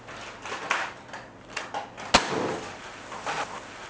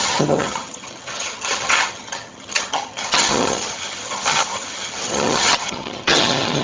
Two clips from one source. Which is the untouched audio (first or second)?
first